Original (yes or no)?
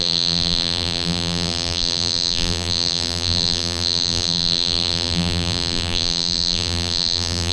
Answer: no